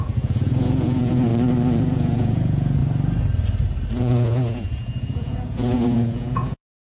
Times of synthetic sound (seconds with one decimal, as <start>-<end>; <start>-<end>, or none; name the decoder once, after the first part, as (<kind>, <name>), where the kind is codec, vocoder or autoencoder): 0.0-1.3 (vocoder, Vocos); 1.8-2.8; 4.0-6.8